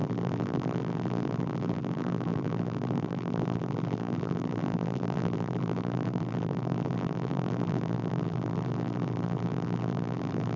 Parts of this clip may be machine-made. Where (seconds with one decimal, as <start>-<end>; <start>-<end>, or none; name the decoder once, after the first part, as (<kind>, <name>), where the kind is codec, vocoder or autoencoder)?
0.0-10.6 (vocoder, BigVGAN v2)